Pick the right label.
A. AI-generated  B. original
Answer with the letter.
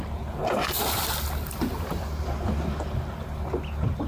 B